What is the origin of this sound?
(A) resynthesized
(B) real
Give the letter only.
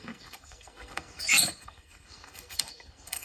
A